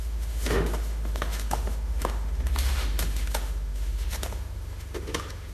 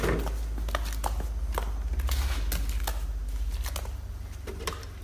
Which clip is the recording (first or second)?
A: second